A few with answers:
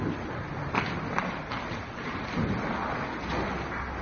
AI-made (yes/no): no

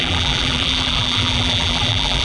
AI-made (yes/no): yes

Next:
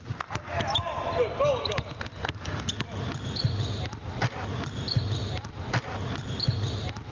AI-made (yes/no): no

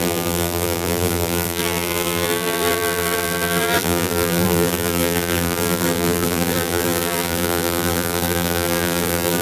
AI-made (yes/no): yes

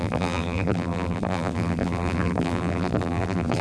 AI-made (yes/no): yes